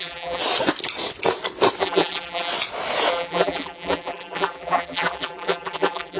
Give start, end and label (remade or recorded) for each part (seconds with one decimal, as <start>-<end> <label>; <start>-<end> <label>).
0.0-0.4 remade; 0.4-1.8 recorded; 1.8-2.5 remade; 2.5-3.1 recorded; 3.1-6.2 remade